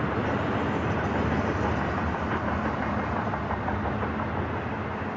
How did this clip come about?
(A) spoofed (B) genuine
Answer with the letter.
B